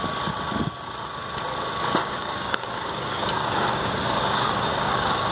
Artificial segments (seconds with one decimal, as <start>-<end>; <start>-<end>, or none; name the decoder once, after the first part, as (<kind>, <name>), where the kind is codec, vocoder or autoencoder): 2.0-5.3 (codec, DAC)